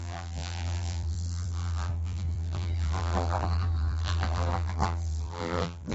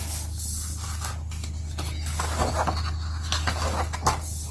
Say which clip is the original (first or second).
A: second